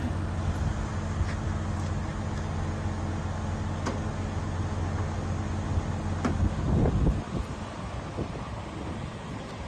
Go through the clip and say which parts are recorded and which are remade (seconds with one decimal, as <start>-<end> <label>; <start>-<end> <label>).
0.0-9.7 recorded